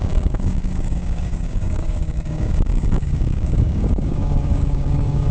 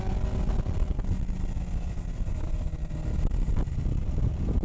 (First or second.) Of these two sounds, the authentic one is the second